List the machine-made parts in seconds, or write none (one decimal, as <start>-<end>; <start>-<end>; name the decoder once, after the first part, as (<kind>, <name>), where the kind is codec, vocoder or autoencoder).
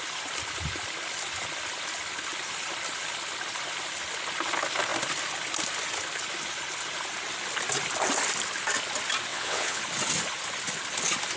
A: 9.3-9.8 (vocoder, WaveNeXt)